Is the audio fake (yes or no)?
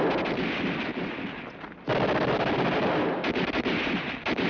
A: no